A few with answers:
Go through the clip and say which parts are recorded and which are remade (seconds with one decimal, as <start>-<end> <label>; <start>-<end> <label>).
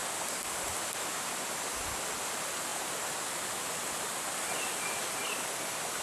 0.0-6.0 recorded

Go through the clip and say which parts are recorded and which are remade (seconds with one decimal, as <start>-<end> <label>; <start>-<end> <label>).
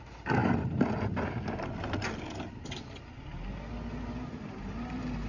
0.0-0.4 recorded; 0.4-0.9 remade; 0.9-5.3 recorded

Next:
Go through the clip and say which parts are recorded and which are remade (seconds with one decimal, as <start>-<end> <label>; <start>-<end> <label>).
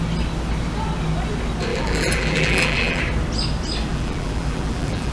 0.0-1.7 recorded; 1.7-3.0 remade; 3.0-3.9 recorded; 3.9-5.1 remade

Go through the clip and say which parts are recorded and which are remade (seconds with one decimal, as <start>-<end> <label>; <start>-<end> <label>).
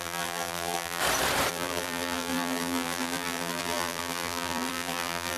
0.0-1.0 remade; 1.0-1.5 recorded; 1.5-5.4 remade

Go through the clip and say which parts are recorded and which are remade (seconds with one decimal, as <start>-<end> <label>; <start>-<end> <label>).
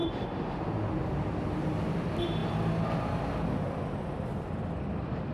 0.0-1.5 recorded; 1.5-2.4 remade; 2.4-4.4 recorded; 4.4-5.3 remade